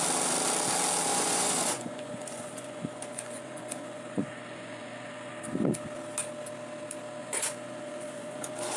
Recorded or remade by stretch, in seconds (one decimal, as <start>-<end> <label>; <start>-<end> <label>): 0.0-1.1 recorded; 1.1-5.3 remade; 5.3-7.2 recorded; 7.2-8.8 remade